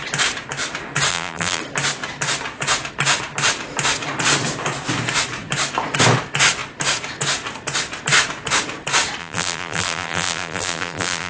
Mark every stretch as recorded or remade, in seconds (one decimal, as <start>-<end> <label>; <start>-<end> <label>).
0.0-1.1 recorded; 1.1-1.6 remade; 1.6-9.2 recorded; 9.2-11.3 remade